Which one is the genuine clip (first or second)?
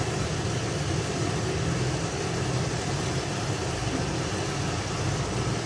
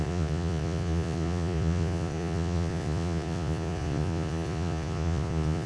first